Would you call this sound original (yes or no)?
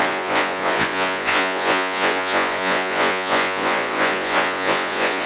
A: no